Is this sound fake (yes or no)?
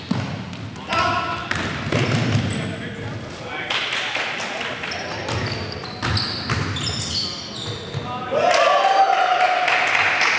no